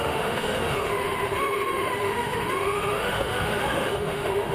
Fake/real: fake